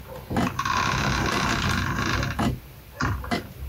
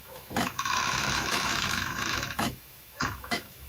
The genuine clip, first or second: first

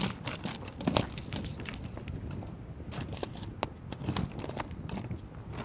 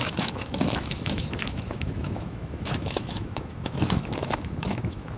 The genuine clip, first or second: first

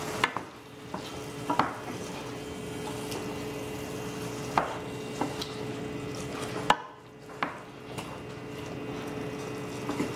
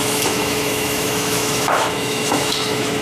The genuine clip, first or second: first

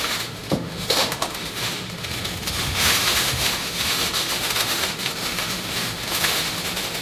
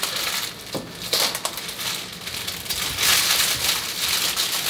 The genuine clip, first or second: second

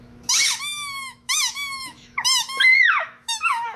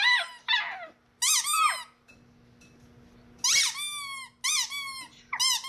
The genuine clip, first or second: second